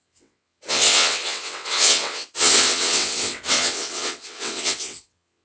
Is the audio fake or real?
fake